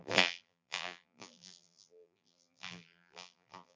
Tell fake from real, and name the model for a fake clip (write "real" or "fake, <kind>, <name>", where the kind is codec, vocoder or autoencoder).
fake, vocoder, BigVGAN v2